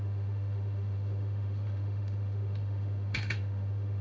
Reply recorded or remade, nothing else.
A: remade